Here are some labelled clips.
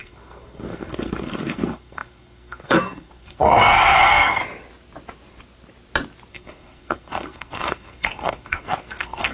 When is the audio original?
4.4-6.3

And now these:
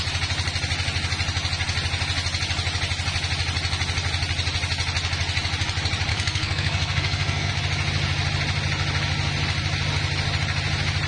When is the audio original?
0.0-6.1; 7.5-11.1

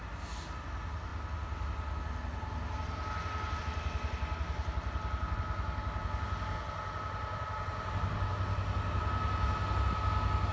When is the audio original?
0.0-10.5